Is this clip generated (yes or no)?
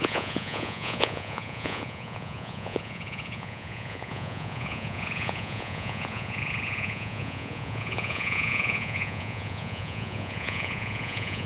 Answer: yes